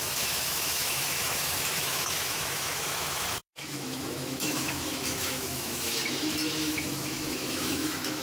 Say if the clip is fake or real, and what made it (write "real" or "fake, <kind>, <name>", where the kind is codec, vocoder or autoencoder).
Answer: fake, autoencoder, DAC-VAE